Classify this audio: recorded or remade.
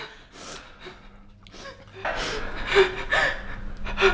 recorded